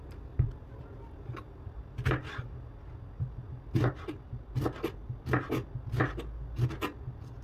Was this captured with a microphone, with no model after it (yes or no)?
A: yes